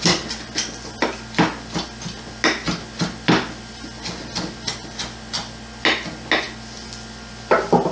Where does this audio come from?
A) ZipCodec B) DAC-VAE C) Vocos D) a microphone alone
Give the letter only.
D